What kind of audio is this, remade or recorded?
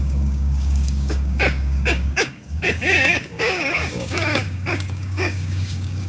remade